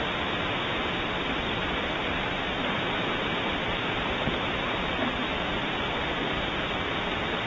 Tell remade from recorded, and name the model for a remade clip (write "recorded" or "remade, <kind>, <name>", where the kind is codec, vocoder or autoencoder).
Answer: recorded